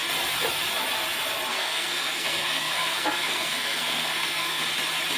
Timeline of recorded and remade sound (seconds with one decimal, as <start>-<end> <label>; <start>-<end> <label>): 0.0-1.5 recorded; 1.5-4.6 remade; 4.6-5.2 recorded